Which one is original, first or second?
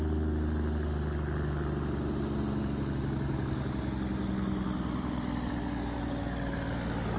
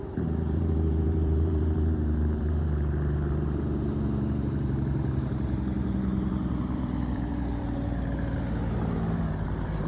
first